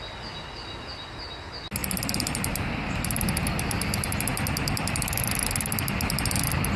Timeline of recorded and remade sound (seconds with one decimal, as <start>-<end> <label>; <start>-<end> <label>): 0.0-6.8 recorded